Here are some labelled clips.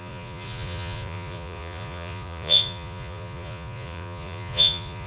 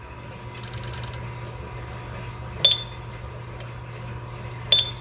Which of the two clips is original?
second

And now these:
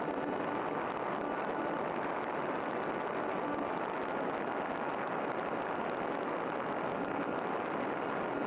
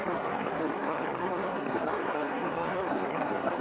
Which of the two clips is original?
first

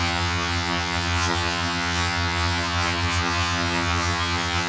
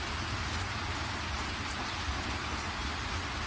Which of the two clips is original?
second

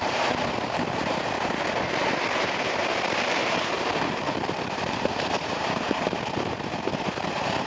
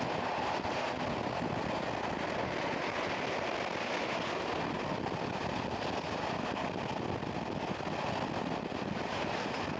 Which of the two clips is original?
second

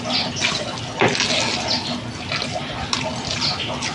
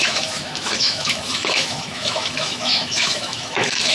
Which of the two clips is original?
first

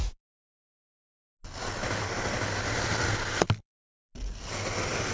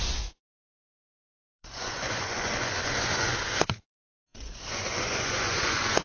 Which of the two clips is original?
first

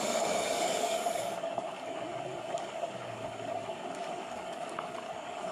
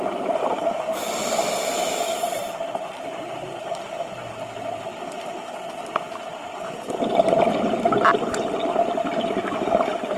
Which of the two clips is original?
second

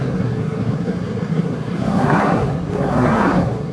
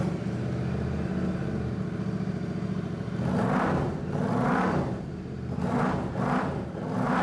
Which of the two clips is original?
second